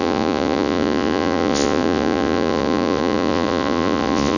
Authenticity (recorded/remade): remade